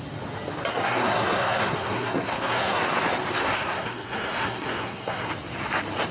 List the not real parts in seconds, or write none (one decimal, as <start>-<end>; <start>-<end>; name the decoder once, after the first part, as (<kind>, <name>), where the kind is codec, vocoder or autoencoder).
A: 0.7-2.8 (codec, SNAC); 3.4-5.3